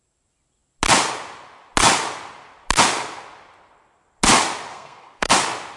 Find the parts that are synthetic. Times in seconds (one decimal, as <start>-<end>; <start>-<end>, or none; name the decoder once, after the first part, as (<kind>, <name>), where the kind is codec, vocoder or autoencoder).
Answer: 4.7-5.3 (codec, SNAC)